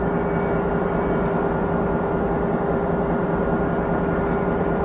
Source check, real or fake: real